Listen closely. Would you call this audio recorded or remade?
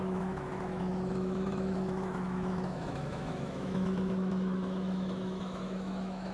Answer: remade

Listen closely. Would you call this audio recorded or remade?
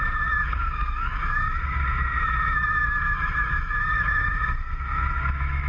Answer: remade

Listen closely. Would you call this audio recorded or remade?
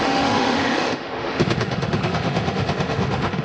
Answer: remade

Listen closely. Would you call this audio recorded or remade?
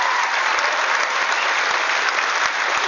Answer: recorded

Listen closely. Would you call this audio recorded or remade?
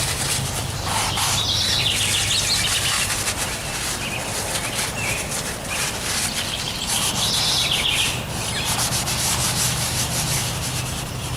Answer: recorded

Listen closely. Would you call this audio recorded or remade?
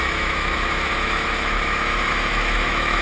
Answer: remade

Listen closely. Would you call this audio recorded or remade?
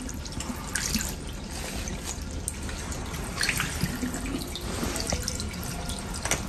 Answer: recorded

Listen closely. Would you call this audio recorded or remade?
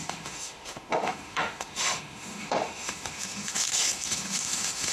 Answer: remade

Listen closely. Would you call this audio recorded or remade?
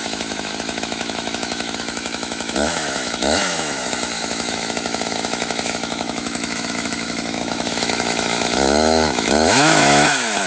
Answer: remade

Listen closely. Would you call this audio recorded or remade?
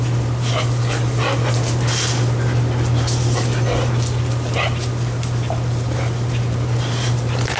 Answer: recorded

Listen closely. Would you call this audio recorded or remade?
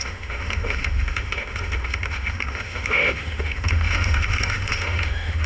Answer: remade